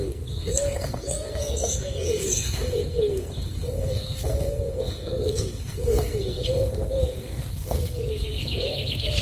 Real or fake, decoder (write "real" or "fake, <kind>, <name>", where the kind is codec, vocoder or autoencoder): fake, codec, SNAC